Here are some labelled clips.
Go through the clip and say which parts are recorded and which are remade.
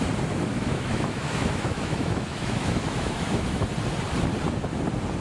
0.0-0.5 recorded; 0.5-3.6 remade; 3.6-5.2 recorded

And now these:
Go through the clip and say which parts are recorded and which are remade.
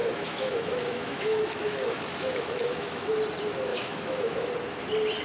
0.0-3.1 remade; 3.1-3.7 recorded; 3.7-4.5 remade; 4.5-5.2 recorded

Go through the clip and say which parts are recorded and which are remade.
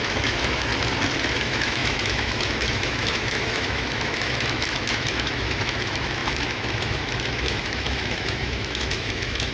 0.0-0.7 remade; 0.7-1.3 recorded; 1.3-9.5 remade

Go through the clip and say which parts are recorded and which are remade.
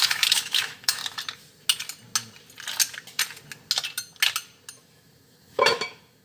0.0-1.0 remade; 1.0-4.7 recorded; 4.7-6.2 remade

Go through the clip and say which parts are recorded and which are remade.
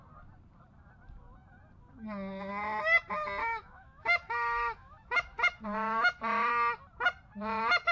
0.0-3.4 recorded; 3.4-6.5 remade; 6.5-7.9 recorded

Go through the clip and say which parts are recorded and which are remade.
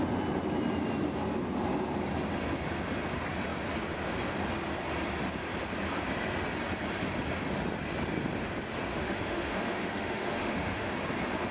0.0-8.9 recorded; 8.9-10.9 remade; 10.9-11.5 recorded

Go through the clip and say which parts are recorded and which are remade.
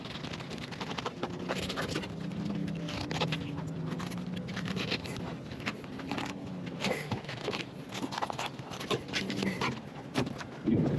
0.0-6.8 recorded; 6.8-7.5 remade; 7.5-11.0 recorded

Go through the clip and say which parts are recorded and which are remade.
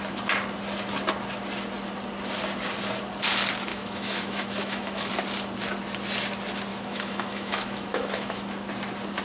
0.0-3.7 recorded; 3.7-5.1 remade; 5.1-6.7 recorded; 6.7-8.7 remade; 8.7-9.2 recorded